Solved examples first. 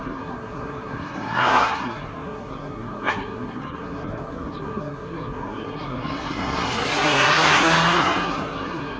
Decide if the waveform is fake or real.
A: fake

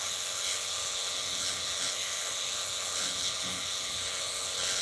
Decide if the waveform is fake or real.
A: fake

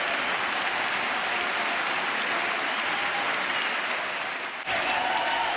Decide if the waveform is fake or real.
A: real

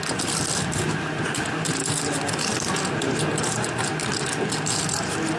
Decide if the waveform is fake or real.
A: real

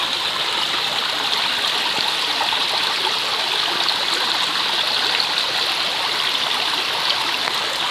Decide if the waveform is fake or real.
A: real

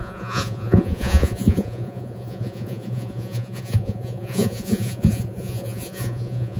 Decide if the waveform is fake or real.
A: fake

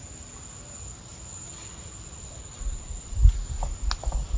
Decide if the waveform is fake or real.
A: real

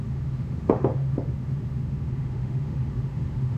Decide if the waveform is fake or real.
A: fake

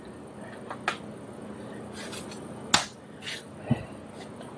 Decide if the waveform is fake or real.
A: real